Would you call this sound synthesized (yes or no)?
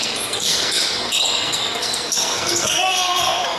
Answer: yes